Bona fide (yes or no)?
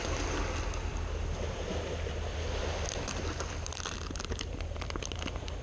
yes